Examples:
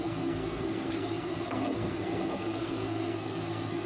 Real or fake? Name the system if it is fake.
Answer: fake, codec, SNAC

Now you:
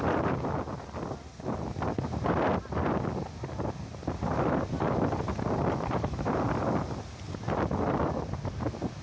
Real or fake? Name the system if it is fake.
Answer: real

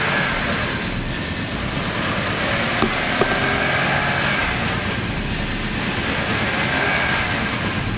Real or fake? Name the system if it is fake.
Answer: real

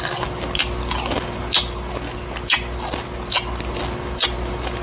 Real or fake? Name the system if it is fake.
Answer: real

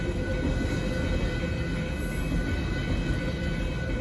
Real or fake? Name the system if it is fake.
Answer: real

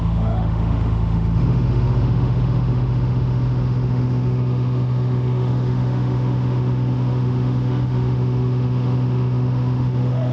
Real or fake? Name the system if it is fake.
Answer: fake, autoencoder, DAC-VAE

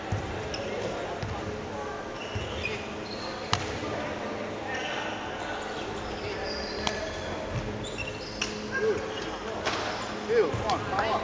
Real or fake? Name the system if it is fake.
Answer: real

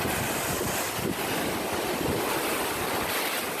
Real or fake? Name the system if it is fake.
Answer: real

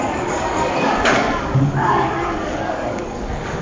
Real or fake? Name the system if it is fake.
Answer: fake, codec, DAC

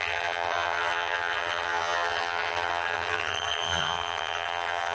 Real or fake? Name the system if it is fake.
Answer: fake, vocoder, HiFi-GAN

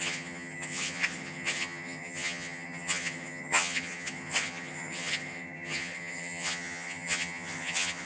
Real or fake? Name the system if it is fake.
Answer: fake, vocoder, HiFi-GAN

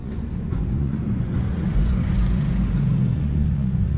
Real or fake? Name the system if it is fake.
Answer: fake, vocoder, Vocos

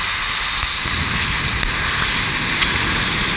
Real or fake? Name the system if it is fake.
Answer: real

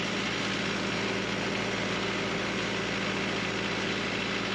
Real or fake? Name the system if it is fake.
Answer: real